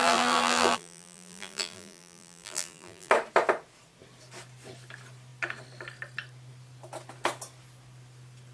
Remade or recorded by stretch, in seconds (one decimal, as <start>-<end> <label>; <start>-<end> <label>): 0.0-3.1 remade; 3.1-8.5 recorded